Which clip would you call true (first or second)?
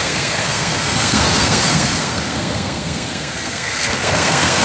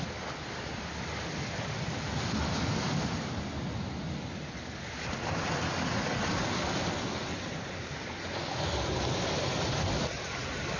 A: second